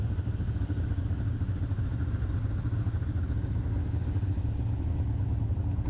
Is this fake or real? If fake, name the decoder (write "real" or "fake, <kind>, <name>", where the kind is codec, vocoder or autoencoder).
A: real